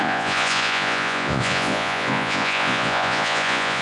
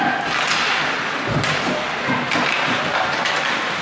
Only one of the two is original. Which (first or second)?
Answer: second